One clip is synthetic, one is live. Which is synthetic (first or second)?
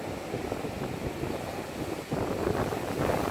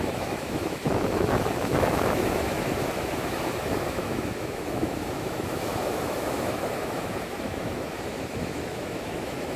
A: second